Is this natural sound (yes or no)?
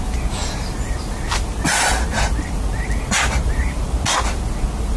yes